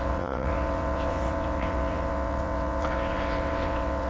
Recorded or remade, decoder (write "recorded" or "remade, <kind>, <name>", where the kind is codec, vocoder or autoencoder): remade, vocoder, WaveNeXt